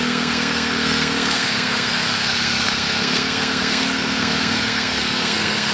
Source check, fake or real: fake